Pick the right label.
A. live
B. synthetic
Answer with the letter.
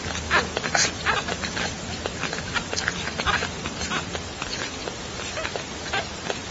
B